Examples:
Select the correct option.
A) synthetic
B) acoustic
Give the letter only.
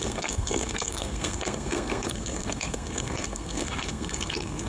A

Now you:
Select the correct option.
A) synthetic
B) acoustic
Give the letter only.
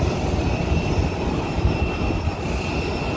B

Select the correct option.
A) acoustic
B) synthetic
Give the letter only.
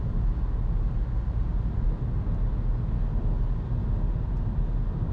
A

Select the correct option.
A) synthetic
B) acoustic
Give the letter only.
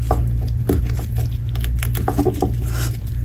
B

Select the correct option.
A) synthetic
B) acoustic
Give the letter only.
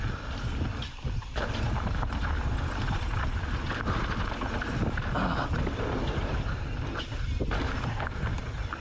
B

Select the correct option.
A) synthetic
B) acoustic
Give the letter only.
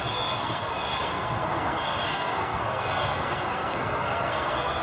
A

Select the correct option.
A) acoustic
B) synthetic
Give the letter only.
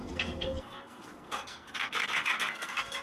B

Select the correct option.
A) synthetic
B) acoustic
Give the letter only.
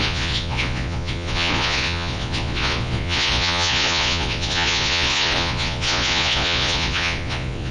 A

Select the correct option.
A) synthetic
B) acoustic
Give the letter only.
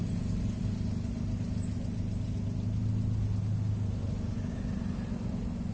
B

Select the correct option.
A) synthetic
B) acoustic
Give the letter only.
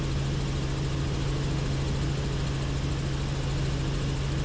B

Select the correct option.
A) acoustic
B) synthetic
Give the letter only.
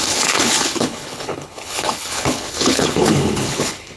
B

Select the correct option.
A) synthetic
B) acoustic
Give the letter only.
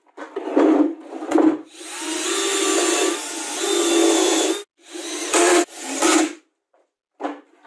B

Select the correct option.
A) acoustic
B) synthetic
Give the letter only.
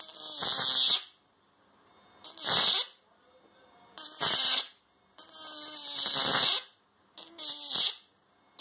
A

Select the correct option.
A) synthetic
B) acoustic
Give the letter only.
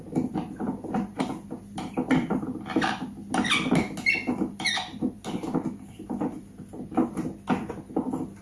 B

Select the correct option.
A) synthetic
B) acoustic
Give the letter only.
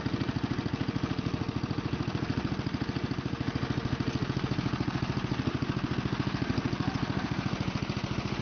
B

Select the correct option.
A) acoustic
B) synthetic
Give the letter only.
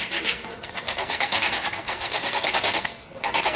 B